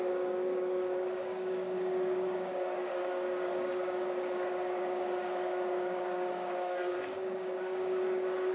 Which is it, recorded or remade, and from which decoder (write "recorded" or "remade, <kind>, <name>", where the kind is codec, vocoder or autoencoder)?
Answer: remade, codec, DAC